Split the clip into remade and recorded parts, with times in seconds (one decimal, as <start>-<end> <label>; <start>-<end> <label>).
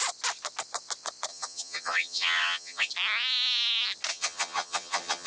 0.0-1.3 recorded; 1.3-2.9 remade; 2.9-4.1 recorded; 4.1-5.3 remade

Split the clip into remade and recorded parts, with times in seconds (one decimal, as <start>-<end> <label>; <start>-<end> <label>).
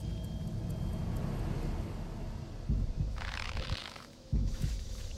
0.0-3.1 recorded; 3.1-5.2 remade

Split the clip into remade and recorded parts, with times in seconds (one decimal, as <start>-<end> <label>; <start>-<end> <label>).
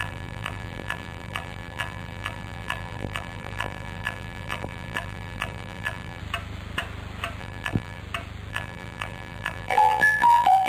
0.0-6.2 remade; 6.2-7.4 recorded; 7.4-8.0 remade; 8.0-8.5 recorded; 8.5-10.7 remade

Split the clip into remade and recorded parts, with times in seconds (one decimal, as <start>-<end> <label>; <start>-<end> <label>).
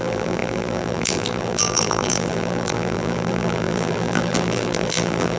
0.0-5.4 remade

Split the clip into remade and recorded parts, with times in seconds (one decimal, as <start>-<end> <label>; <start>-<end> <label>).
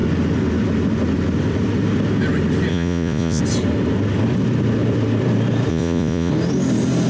0.0-2.7 recorded; 2.7-3.4 remade; 3.4-5.7 recorded; 5.7-6.3 remade; 6.3-7.1 recorded